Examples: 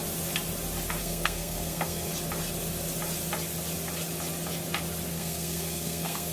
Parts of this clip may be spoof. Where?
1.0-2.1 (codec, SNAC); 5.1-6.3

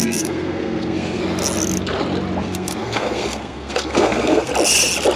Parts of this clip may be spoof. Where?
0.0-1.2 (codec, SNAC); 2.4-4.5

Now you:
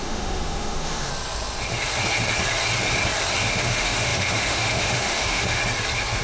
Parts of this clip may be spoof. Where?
0.0-1.1 (autoencoder, DAC-VAE); 3.5-5.6

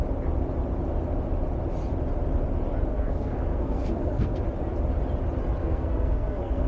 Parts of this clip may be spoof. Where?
2.9-4.4 (codec, SNAC); 5.6-6.7

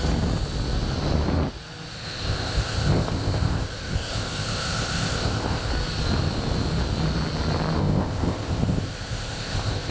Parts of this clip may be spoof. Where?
1.9-5.7 (codec, ZipCodec); 7.8-9.9

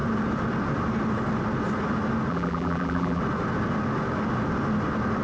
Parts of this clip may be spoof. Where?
2.3-3.2 (vocoder, BigVGAN v2)

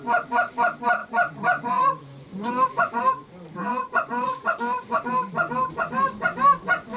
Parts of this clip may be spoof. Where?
1.0-3.0 (vocoder, Vocos); 3.7-5.0